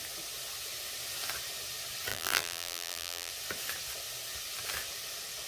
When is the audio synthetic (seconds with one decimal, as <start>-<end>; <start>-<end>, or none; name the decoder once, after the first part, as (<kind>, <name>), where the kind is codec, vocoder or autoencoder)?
2.1-3.3 (vocoder, BigVGAN v2)